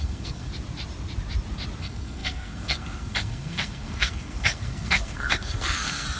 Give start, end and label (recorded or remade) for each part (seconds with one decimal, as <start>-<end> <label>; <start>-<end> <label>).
0.0-0.5 remade; 0.5-1.8 recorded; 1.8-6.2 remade